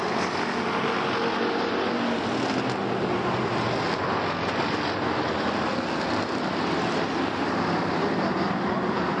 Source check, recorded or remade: recorded